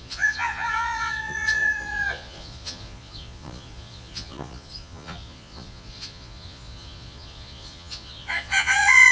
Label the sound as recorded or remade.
remade